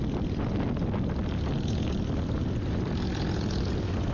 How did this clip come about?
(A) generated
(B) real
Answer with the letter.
B